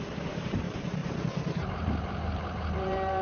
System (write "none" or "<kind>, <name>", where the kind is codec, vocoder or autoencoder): vocoder, BigVGAN v2